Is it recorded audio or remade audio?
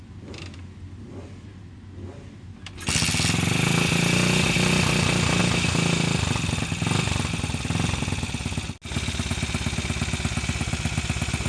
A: recorded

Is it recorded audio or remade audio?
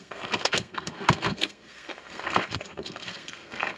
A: remade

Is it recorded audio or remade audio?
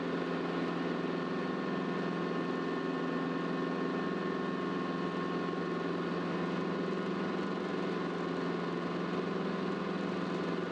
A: recorded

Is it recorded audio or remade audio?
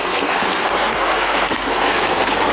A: remade